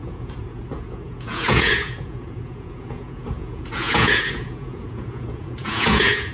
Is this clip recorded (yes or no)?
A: no